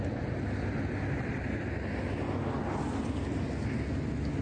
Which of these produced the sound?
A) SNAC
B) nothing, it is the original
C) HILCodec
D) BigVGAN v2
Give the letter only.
B